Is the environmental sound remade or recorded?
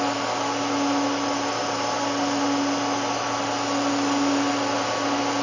recorded